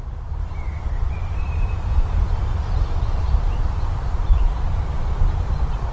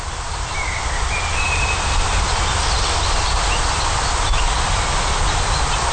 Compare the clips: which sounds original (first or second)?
second